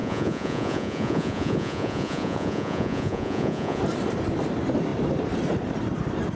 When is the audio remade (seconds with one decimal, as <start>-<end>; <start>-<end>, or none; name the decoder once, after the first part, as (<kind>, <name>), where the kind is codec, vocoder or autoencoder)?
0.0-3.8 (vocoder, Vocos)